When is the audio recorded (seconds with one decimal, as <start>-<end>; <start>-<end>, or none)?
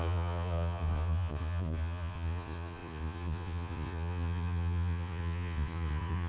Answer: none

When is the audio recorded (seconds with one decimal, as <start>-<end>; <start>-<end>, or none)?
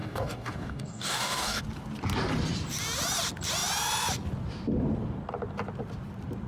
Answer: 1.6-6.5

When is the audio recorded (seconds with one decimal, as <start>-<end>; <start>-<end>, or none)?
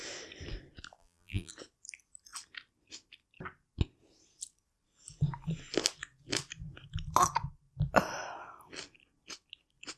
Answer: 0.0-1.0; 1.5-10.0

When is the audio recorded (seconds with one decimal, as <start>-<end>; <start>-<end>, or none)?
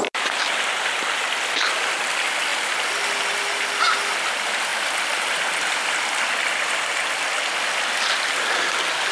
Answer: 0.0-9.1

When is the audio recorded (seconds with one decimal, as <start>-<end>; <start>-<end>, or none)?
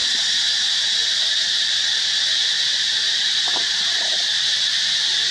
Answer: 0.0-3.6; 4.2-5.3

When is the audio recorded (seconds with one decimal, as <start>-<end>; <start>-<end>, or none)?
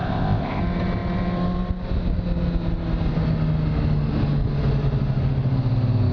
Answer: 0.6-6.1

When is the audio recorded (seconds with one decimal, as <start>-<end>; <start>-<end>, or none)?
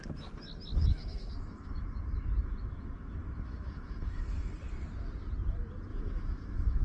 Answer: 0.0-0.8; 4.5-5.9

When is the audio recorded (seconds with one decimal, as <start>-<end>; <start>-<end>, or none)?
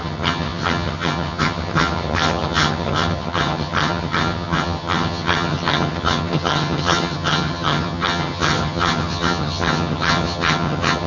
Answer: none